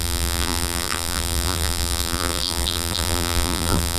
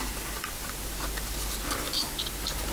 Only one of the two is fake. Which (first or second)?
first